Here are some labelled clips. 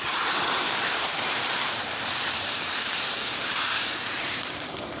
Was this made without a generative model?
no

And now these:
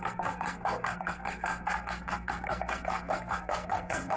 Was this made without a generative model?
no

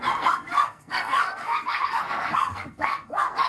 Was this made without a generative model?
no